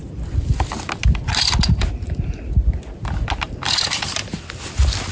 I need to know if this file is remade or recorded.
recorded